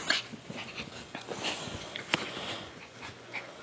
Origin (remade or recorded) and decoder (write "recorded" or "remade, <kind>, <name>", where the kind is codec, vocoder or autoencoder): remade, vocoder, Vocos